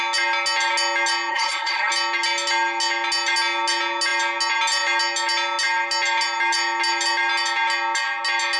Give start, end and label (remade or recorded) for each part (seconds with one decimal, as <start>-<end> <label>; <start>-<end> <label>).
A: 0.0-1.3 recorded; 1.3-1.9 remade; 1.9-8.6 recorded